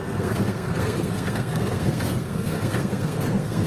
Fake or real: fake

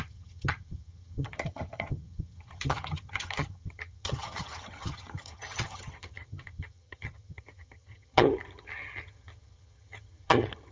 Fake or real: fake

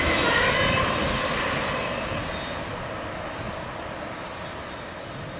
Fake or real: real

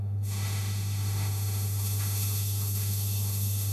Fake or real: fake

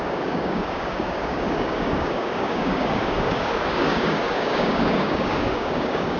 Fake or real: fake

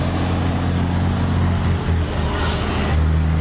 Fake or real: real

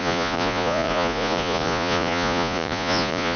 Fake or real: fake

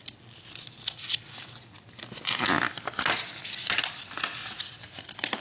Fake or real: real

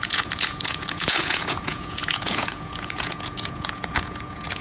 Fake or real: fake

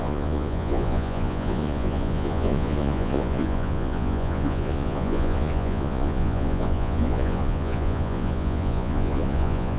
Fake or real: fake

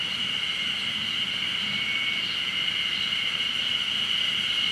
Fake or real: real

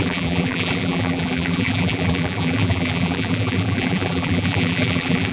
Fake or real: fake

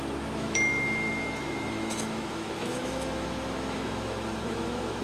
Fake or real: fake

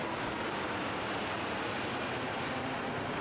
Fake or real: real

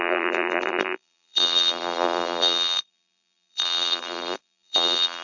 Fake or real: fake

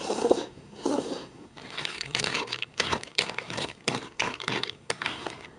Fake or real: fake